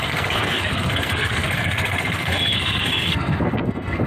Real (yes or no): no